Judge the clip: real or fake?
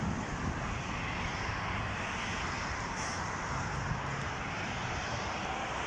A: real